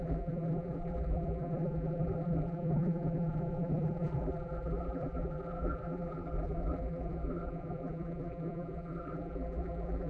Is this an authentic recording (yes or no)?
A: no